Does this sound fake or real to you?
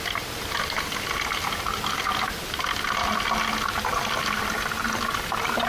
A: real